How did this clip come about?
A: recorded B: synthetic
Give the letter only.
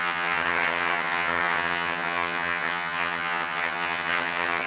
B